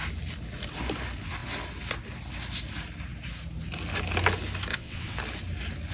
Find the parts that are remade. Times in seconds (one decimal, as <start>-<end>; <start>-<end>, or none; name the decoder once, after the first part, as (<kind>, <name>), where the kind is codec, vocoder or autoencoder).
4.7-5.2 (vocoder, WaveNeXt)